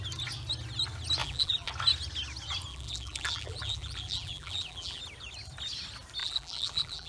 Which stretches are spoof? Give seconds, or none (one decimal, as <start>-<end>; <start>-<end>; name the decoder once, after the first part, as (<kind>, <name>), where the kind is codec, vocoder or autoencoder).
1.2-1.7 (vocoder, BigVGAN v2); 2.7-5.0; 6.2-7.1

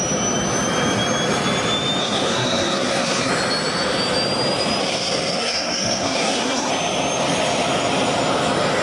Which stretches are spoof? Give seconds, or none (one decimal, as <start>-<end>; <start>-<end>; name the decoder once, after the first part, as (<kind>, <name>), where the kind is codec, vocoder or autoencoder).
2.0-3.3 (codec, SNAC); 4.8-6.7